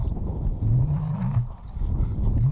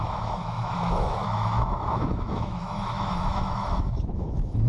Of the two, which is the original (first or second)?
first